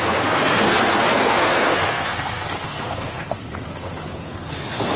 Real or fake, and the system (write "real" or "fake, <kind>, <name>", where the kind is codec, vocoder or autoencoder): fake, codec, SNAC